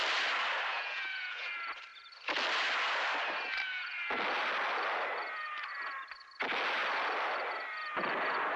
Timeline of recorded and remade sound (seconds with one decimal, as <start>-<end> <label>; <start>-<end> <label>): 0.0-0.7 recorded; 0.7-1.5 remade; 1.5-8.6 recorded